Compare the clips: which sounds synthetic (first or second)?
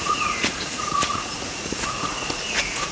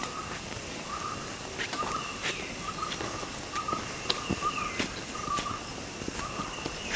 first